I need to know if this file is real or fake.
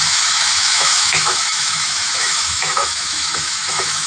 fake